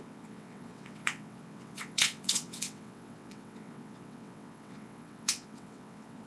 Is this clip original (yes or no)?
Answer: no